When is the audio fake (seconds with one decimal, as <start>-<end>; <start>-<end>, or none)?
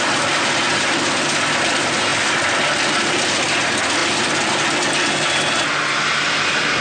none